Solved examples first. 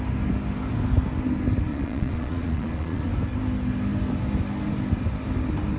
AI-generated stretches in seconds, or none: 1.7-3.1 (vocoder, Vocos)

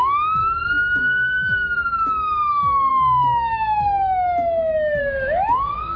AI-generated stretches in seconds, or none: 0.0-0.4 (autoencoder, DAC-VAE); 1.0-6.0